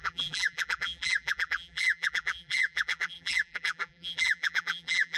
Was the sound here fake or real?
fake